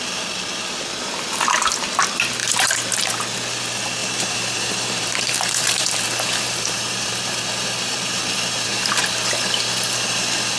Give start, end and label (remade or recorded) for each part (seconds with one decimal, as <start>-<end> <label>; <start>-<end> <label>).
0.0-2.4 recorded; 2.4-2.9 remade; 2.9-4.0 recorded; 4.0-9.0 remade; 9.0-10.6 recorded